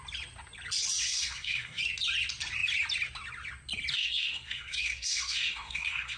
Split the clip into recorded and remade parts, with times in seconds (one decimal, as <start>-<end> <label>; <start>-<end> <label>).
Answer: 0.0-1.0 recorded; 1.0-1.8 remade; 1.8-3.9 recorded; 3.9-6.2 remade